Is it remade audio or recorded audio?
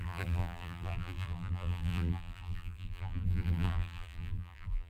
remade